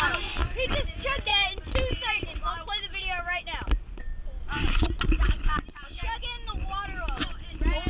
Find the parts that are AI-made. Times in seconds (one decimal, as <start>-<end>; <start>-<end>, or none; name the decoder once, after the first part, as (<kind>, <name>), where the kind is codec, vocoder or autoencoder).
none